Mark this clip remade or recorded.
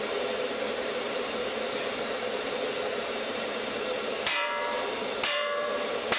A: remade